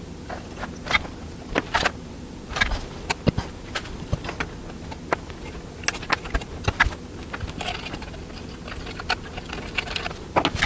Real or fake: real